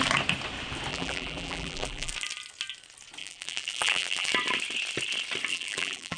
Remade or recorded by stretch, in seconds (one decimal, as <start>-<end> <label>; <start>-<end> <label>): 0.0-0.9 recorded; 0.9-2.1 remade; 2.1-3.2 recorded; 3.2-4.3 remade; 4.3-5.5 recorded; 5.5-6.2 remade